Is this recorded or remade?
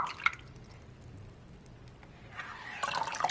recorded